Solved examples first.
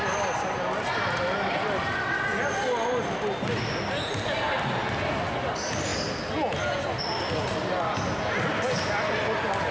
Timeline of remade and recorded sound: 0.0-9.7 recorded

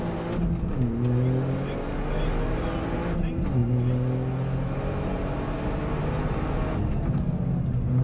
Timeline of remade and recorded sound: 0.0-8.0 recorded

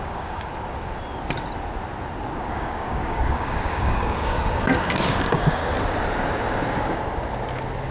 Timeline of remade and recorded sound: 0.0-0.5 remade; 0.5-2.4 recorded; 2.4-5.6 remade; 5.6-7.9 recorded